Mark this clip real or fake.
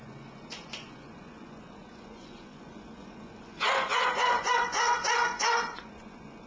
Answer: fake